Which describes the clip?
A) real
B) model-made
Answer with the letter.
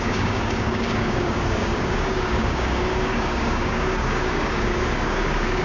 B